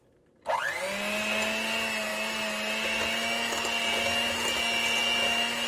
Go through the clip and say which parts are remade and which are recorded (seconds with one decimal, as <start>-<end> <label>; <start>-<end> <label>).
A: 0.0-5.7 recorded